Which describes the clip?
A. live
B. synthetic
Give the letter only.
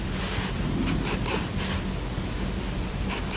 A